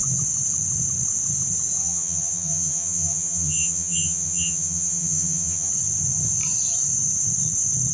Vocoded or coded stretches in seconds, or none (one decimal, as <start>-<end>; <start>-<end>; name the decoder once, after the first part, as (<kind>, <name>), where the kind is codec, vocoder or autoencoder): 1.8-5.7 (vocoder, HiFi-GAN)